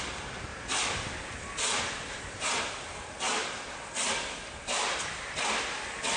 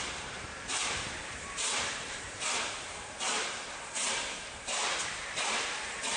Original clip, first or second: first